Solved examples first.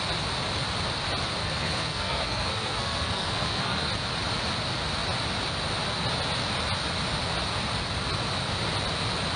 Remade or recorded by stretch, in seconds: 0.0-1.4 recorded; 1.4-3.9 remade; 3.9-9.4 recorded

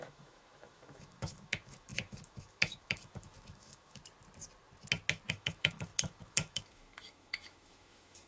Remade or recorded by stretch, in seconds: 0.0-4.0 remade; 4.0-5.3 recorded; 5.3-8.3 remade

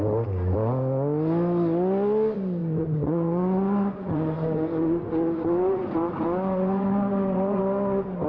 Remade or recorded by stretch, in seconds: 0.0-2.6 recorded; 2.6-7.6 remade; 7.6-8.3 recorded

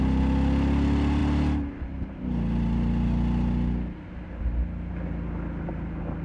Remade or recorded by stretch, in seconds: 0.0-6.2 recorded

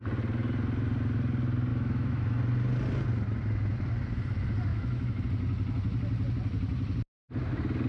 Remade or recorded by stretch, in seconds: 0.0-1.7 recorded; 1.7-2.4 remade; 2.4-4.7 recorded; 4.7-5.2 remade; 5.2-7.9 recorded